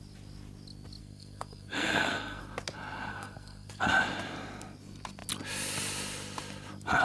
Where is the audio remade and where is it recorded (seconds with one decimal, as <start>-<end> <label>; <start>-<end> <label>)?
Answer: 0.0-1.0 recorded; 1.0-2.4 remade; 2.4-3.1 recorded; 3.1-3.9 remade; 3.9-7.0 recorded